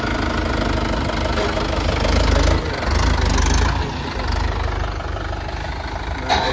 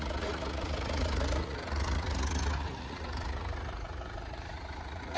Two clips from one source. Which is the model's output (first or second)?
second